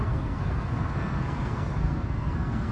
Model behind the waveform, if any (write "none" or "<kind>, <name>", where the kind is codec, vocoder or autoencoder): codec, SNAC